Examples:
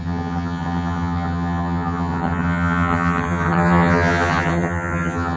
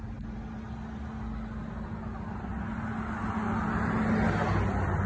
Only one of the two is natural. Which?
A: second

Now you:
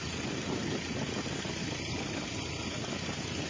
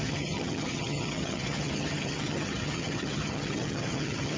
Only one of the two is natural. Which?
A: first